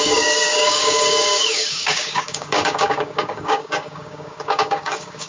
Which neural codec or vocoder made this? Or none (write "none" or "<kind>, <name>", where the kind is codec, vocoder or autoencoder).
codec, DAC